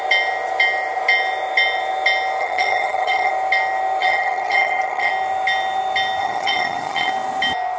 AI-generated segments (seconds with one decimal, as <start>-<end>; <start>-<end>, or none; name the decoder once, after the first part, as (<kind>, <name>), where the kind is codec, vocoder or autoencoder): 2.4-3.3 (vocoder, HiFi-GAN); 4.0-5.1; 6.2-7.1